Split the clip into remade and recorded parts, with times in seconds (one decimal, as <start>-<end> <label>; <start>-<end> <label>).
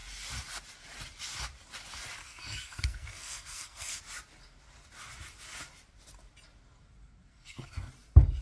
0.0-2.2 recorded; 2.2-4.0 remade; 4.0-7.3 recorded; 7.3-7.9 remade; 7.9-8.4 recorded